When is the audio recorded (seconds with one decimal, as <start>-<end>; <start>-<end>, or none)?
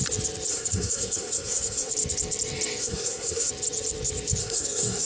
0.0-0.5; 1.9-2.8; 3.5-4.4